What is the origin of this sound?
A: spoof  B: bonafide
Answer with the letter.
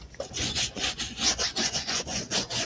A